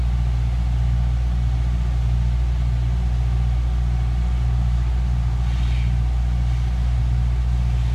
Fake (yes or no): no